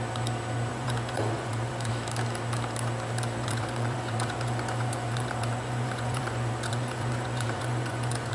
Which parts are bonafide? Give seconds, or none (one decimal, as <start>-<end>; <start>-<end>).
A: 0.0-0.7; 1.9-3.4